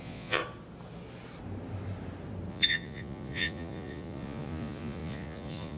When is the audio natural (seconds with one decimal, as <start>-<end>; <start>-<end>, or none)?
0.4-2.5